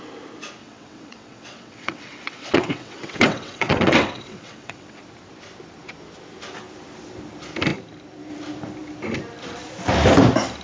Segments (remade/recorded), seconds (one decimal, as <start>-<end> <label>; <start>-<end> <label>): 0.0-0.6 recorded; 0.6-5.0 remade; 5.0-10.6 recorded